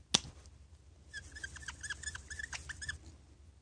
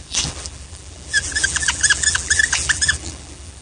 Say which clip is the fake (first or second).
second